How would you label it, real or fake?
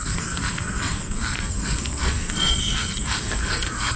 fake